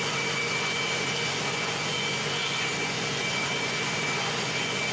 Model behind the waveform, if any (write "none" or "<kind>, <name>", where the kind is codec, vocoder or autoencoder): vocoder, Vocos